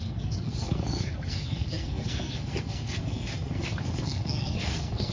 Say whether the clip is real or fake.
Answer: fake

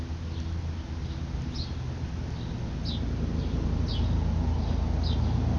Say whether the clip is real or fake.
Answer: real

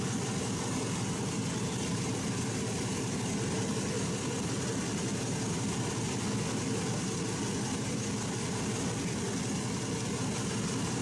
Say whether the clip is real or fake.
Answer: real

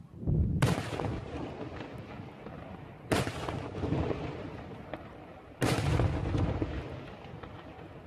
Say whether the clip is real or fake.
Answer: real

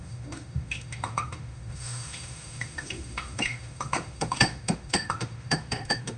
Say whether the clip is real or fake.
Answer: fake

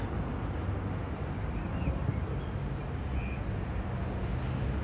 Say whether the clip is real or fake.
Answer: real